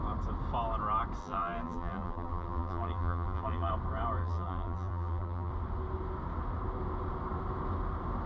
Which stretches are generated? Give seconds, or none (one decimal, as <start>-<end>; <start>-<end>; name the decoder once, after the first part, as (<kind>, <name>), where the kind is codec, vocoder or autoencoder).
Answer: 1.2-3.7 (vocoder, BigVGAN v2); 4.2-5.5

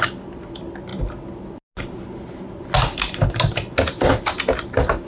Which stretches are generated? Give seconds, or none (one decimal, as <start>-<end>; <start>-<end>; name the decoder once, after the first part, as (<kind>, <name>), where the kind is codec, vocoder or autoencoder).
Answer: 0.0-0.9 (vocoder, BigVGAN v2); 4.0-5.1